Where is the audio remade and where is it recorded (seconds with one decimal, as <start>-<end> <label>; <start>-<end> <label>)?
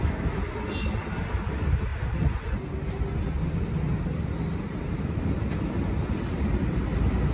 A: 0.0-7.3 recorded